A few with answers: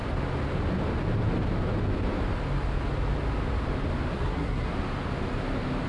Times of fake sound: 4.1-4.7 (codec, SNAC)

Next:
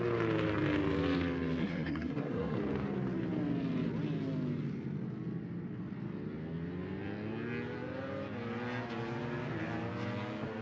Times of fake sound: 1.6-2.6 (codec, SNAC)

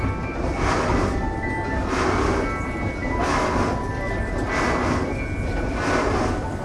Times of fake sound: none